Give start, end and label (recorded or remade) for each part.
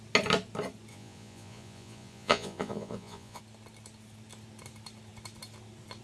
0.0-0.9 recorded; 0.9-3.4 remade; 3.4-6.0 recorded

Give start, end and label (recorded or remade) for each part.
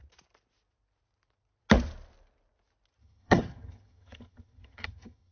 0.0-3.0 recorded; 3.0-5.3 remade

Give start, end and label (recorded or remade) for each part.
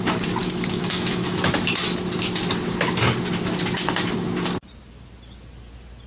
0.0-0.4 recorded; 0.4-1.5 remade; 1.5-6.1 recorded